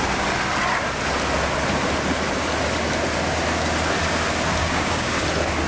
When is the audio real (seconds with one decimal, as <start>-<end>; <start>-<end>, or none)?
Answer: 0.0-4.6; 5.2-5.7